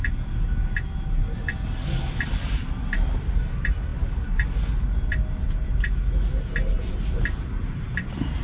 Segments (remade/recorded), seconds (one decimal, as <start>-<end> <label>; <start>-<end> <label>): 0.0-8.4 recorded